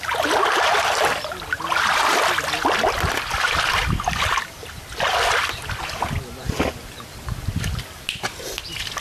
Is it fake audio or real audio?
real